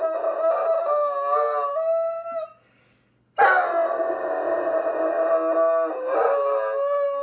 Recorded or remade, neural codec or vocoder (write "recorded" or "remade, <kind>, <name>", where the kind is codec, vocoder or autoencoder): recorded